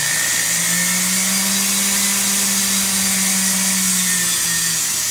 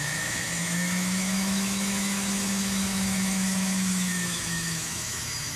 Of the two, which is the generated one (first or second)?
second